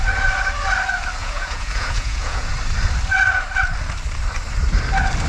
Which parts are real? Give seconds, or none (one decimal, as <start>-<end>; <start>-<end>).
0.0-1.2; 2.5-5.3